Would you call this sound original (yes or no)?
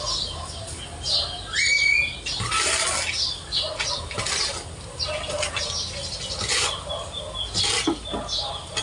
yes